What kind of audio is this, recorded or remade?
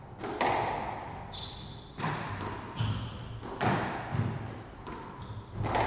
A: recorded